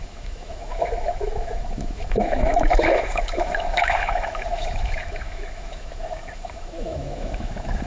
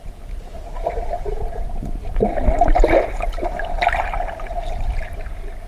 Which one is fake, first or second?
first